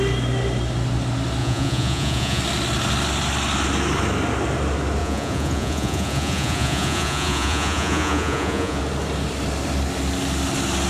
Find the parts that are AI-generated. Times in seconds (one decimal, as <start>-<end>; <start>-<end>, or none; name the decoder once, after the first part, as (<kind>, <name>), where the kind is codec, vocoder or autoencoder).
1.4-2.4 (vocoder, Vocos); 5.0-8.8